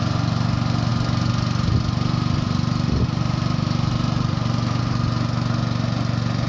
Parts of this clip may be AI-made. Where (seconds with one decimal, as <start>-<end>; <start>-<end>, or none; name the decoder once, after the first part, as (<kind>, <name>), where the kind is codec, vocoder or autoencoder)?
none